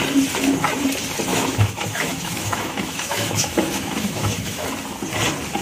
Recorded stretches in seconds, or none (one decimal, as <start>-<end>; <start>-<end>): 0.0-1.3; 4.7-5.6